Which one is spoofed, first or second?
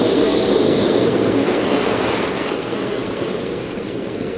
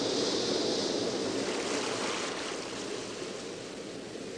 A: first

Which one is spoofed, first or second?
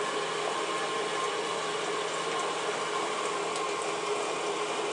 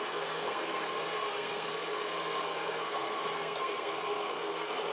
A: second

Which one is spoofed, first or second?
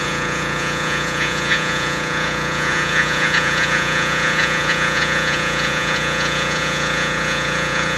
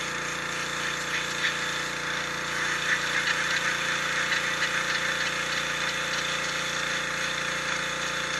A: first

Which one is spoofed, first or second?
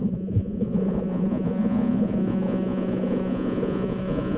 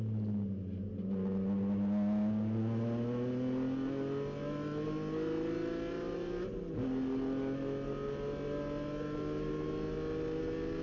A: first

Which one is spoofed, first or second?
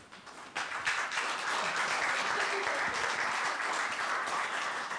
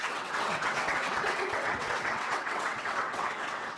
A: second